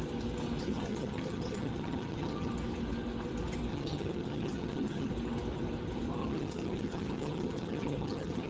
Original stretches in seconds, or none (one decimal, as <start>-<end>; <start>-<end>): 0.0-0.6; 2.5-3.7; 5.1-6.2